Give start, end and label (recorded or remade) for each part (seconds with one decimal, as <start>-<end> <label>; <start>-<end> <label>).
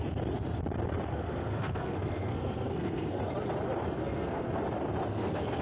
0.0-1.1 recorded; 1.1-3.2 remade; 3.2-4.0 recorded; 4.0-4.5 remade; 4.5-5.1 recorded; 5.1-5.6 remade